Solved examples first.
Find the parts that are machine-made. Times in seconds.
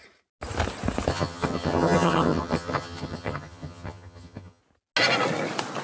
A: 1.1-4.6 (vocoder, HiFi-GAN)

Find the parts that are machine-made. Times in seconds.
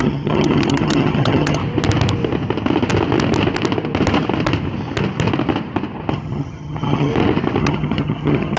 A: 0.0-1.6 (vocoder, HiFi-GAN); 6.1-7.1; 7.6-8.6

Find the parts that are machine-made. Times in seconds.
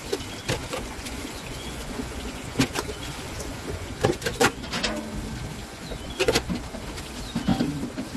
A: 0.6-4.7 (vocoder, Vocos); 5.6-6.5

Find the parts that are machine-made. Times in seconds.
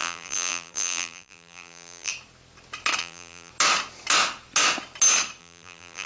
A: 0.0-2.1 (vocoder, BigVGAN v2); 3.0-3.5; 5.4-6.1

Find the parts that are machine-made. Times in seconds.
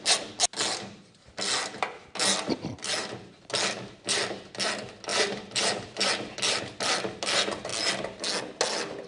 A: 3.0-3.5 (vocoder, BigVGAN v2)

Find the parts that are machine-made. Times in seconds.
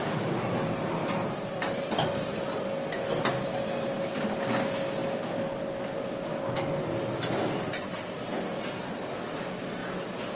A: 1.0-2.3 (vocoder, BigVGAN v2)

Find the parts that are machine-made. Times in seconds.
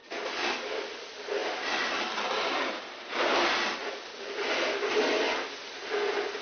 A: 0.0-0.9 (vocoder, BigVGAN v2); 1.4-3.1; 3.8-5.7